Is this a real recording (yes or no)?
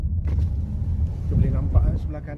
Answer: yes